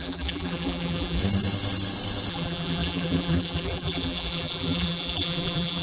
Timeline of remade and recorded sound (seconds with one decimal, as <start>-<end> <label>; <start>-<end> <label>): 0.0-1.2 remade; 1.2-2.3 recorded; 2.3-5.8 remade